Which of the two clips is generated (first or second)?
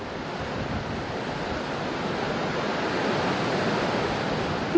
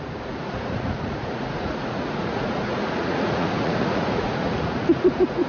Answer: second